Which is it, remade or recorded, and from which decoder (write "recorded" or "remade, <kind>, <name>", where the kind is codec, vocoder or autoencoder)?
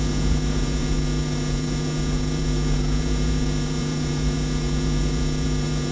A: remade, vocoder, Vocos